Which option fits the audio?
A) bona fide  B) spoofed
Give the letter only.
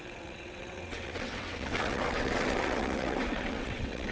B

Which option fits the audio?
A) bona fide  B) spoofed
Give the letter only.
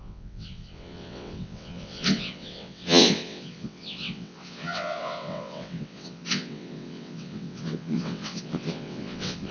B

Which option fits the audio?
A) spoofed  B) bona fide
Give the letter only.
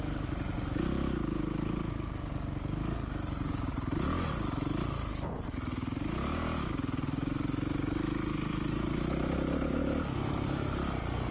B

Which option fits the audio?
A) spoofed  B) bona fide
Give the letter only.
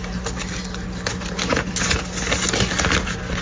B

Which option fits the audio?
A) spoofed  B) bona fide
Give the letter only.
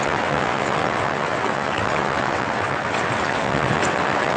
A